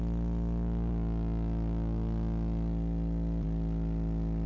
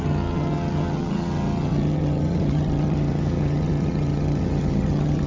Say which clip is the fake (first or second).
second